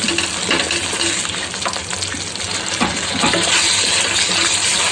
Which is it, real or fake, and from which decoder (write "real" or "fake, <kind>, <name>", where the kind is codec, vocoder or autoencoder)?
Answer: real